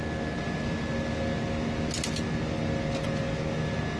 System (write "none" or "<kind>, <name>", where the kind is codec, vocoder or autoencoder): none